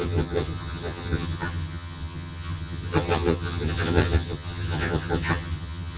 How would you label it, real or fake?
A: fake